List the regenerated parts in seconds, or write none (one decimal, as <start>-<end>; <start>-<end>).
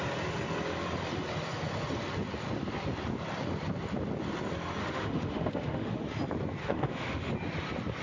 4.8-6.0; 6.6-7.3